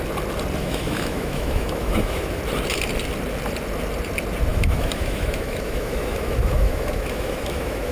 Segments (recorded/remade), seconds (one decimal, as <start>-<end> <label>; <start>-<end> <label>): 0.0-0.6 recorded; 0.6-2.4 remade; 2.4-4.5 recorded; 4.5-7.9 remade